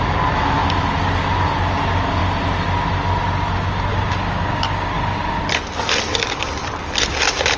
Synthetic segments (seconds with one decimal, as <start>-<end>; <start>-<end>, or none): 3.9-5.4